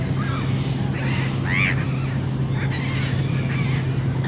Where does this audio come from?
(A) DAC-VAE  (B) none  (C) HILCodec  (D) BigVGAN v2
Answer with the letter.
B